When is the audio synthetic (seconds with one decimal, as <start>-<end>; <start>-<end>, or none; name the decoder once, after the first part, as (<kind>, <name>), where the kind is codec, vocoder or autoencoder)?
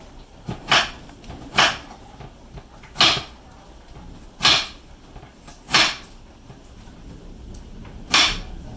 none